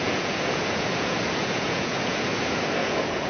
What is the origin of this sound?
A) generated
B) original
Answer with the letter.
A